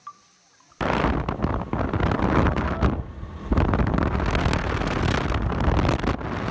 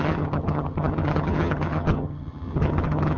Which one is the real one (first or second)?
first